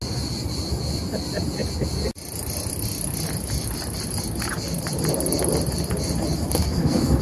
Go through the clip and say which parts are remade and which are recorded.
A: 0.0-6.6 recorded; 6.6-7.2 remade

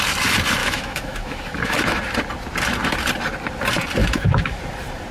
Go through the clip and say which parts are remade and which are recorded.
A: 0.0-0.6 recorded; 0.6-2.0 remade; 2.0-4.0 recorded; 4.0-4.6 remade; 4.6-5.1 recorded

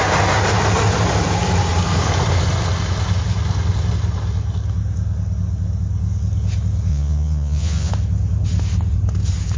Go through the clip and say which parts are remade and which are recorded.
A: 0.0-6.9 recorded; 6.9-7.9 remade; 7.9-9.6 recorded